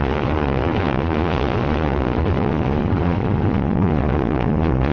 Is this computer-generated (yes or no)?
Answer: yes